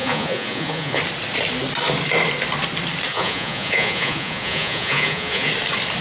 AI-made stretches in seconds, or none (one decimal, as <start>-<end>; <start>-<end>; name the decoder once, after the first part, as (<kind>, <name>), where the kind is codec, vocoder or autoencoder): 0.0-1.0 (vocoder, Vocos); 3.1-5.5